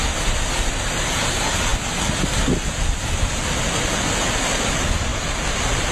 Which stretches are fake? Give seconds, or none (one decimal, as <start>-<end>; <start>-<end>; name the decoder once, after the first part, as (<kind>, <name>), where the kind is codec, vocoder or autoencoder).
none